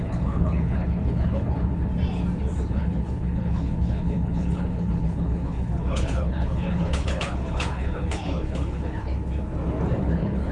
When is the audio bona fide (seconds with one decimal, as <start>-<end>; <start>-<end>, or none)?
1.9-2.7; 9.1-10.0